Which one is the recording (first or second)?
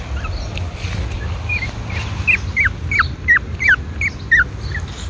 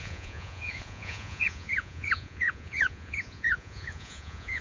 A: first